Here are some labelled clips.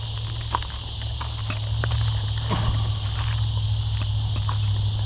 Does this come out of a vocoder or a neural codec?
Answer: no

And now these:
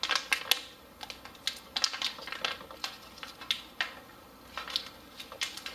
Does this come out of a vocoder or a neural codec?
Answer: no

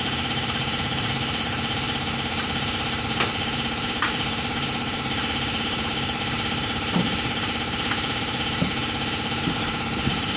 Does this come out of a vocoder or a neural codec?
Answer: yes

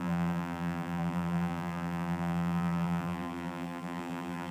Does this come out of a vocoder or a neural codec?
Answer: yes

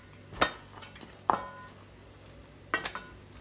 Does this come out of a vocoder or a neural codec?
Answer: no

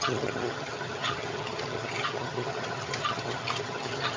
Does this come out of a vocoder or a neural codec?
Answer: yes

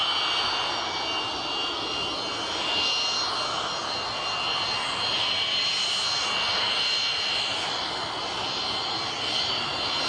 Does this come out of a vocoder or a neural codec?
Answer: no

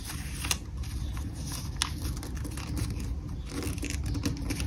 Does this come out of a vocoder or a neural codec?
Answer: no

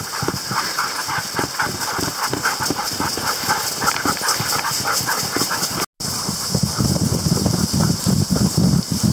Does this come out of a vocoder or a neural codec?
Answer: no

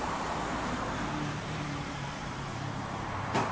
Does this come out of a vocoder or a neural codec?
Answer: yes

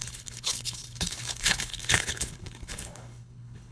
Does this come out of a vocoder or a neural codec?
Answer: yes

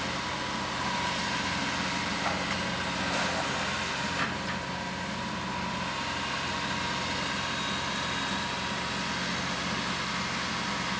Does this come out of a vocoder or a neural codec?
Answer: no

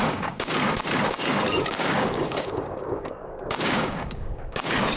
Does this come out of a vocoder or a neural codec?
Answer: yes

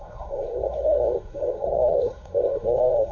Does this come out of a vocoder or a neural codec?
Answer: yes